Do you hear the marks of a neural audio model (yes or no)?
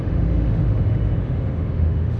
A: yes